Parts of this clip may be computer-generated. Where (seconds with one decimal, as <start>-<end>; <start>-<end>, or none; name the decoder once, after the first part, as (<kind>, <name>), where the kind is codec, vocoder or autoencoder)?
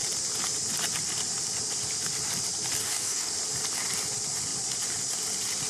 2.8-3.3 (codec, DAC)